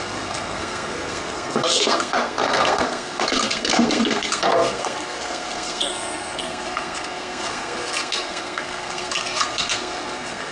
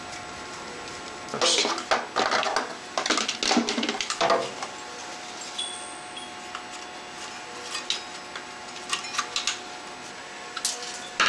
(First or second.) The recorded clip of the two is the second